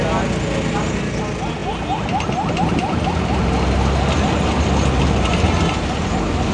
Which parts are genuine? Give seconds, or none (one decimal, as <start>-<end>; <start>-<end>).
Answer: 0.0-6.5